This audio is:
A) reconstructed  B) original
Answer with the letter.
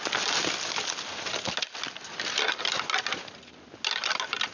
B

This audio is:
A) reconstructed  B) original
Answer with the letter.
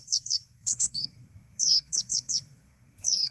A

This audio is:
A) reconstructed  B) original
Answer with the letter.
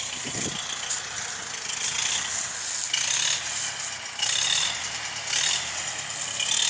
B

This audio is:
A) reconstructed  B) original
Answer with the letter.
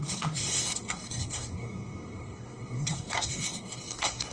A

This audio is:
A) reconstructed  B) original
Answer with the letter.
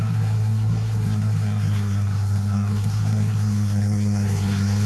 A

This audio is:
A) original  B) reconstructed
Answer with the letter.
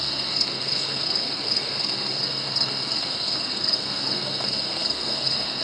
B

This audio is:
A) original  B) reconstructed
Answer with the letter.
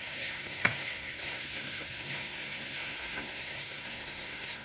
B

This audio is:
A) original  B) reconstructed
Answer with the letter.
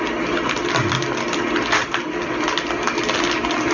A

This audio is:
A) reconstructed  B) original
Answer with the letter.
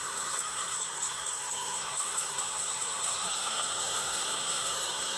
A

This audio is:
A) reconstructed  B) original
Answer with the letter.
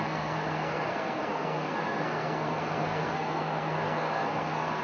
A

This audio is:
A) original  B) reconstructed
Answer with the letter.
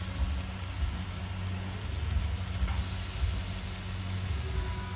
A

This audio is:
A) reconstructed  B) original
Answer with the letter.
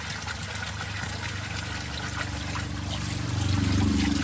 B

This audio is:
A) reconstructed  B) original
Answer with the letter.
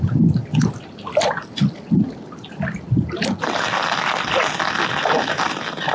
B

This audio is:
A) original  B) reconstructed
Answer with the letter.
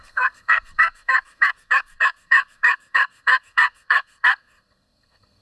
B